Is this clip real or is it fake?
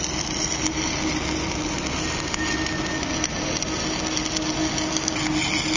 real